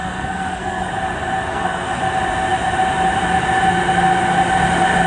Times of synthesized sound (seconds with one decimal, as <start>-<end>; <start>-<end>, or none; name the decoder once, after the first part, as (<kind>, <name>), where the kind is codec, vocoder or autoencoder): 0.0-0.9 (codec, SNAC); 1.5-2.0